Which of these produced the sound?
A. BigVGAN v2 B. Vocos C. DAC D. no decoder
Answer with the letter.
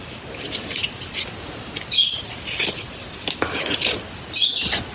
D